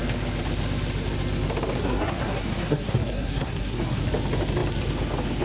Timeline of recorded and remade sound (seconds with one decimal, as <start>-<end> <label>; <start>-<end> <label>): 0.0-1.8 recorded; 1.8-4.0 remade; 4.0-5.4 recorded